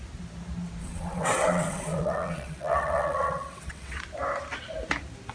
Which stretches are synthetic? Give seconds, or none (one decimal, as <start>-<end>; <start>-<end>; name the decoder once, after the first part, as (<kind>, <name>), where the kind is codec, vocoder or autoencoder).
0.8-4.0 (vocoder, WaveNeXt)